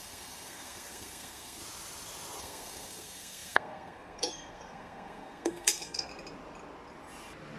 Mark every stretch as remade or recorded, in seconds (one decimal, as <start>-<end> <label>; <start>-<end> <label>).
0.0-1.6 remade; 1.6-2.4 recorded; 2.4-6.1 remade; 6.1-7.6 recorded